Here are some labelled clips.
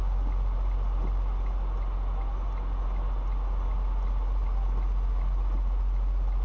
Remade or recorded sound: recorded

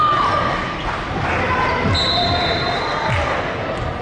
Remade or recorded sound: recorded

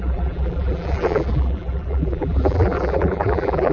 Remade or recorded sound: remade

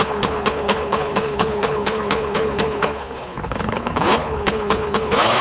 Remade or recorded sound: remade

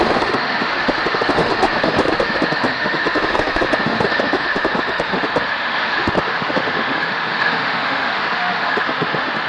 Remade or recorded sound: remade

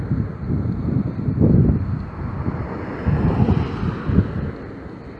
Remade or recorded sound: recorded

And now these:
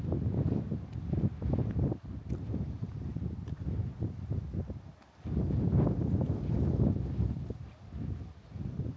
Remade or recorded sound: recorded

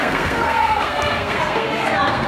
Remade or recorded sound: remade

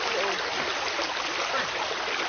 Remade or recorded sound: recorded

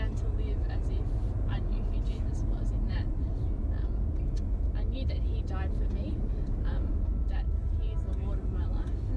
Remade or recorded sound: recorded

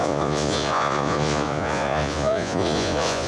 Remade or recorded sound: remade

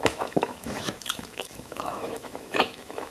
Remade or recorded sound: remade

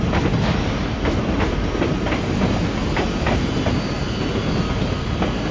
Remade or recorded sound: recorded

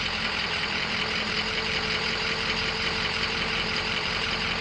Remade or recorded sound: remade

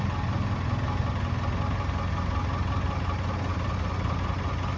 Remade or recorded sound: recorded